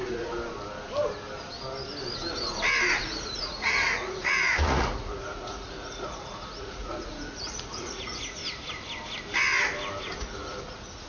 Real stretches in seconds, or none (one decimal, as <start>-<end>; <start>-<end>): 0.4-3.0; 8.4-10.0